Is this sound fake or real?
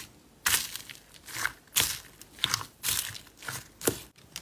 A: real